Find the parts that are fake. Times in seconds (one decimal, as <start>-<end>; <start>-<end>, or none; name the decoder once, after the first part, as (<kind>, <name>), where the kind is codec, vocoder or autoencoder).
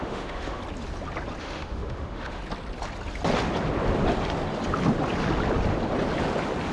0.0-0.6 (autoencoder, DAC-VAE); 1.4-2.4